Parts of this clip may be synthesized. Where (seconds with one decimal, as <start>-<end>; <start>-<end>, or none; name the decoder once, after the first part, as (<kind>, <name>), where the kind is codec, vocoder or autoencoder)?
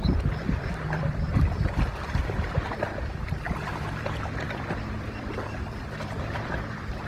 0.0-1.3 (vocoder, BigVGAN v2); 2.2-7.1